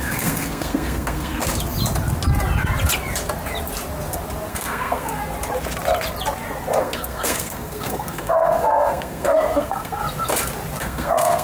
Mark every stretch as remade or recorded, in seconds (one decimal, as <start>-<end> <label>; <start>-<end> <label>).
0.0-1.5 remade; 1.5-4.5 recorded; 4.5-5.2 remade; 5.2-6.8 recorded; 6.8-10.0 remade; 10.0-10.8 recorded; 10.8-11.4 remade